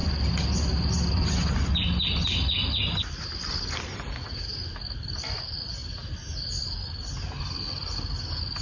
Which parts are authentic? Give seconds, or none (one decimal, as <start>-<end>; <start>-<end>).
0.0-8.6